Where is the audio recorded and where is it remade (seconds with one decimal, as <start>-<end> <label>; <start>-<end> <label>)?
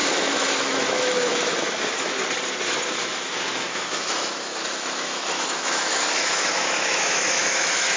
0.0-2.2 remade; 2.2-3.0 recorded; 3.0-8.0 remade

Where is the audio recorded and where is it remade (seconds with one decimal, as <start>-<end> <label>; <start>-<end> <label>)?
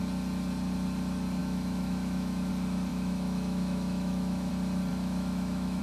0.0-1.4 recorded; 1.4-2.5 remade; 2.5-2.9 recorded; 2.9-4.5 remade; 4.5-4.9 recorded; 4.9-5.8 remade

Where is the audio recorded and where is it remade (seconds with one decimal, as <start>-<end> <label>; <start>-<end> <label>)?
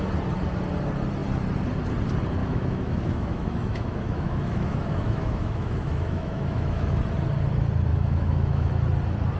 0.0-2.4 recorded; 2.4-7.0 remade; 7.0-7.9 recorded; 7.9-8.7 remade; 8.7-9.4 recorded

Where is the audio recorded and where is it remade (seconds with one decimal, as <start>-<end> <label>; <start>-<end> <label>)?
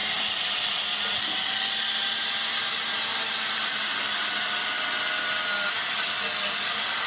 0.0-7.1 recorded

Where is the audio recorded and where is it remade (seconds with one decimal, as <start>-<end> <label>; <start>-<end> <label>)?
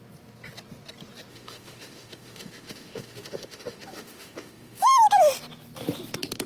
0.0-1.3 recorded; 1.3-4.9 remade; 4.9-6.5 recorded